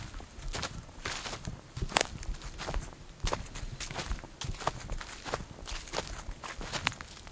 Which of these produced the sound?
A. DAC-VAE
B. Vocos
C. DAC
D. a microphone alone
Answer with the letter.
D